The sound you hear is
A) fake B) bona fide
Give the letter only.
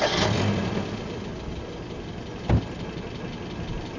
B